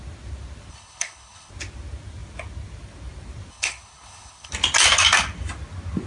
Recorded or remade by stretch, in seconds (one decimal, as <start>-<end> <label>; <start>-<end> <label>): 0.0-0.7 recorded; 0.7-1.5 remade; 1.5-3.5 recorded; 3.5-4.5 remade; 4.5-6.1 recorded